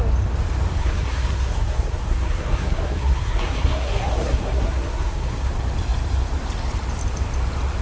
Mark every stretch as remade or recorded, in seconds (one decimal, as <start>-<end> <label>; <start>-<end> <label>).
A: 0.0-0.8 recorded; 0.8-5.5 remade; 5.5-7.8 recorded